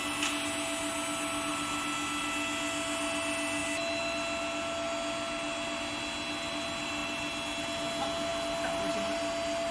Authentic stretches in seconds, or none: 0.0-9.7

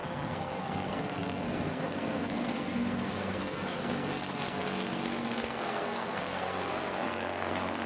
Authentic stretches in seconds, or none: none

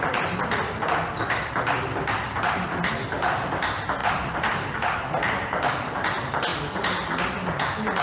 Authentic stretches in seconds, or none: 0.0-8.0

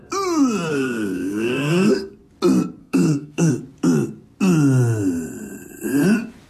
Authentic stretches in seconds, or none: 0.0-0.7; 2.1-2.8; 3.5-6.5

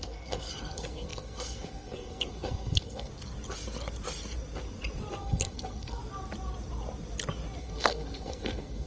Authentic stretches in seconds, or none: 3.1-5.2; 6.0-7.6

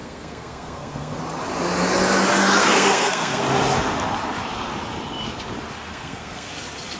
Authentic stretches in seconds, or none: 1.2-2.6; 3.4-5.9; 6.5-7.0

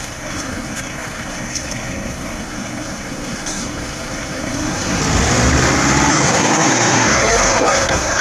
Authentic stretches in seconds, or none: 5.0-6.1